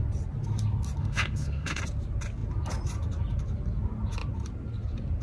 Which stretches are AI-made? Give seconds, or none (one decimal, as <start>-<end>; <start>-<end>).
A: 1.0-1.8